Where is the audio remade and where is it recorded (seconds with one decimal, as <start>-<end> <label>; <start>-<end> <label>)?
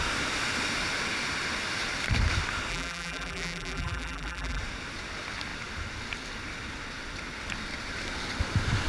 0.0-2.7 recorded; 2.7-4.6 remade; 4.6-8.9 recorded